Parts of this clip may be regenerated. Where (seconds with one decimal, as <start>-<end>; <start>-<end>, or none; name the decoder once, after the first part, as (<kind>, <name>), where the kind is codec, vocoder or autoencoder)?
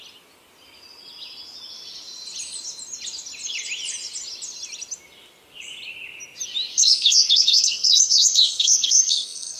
6.7-9.6 (codec, SNAC)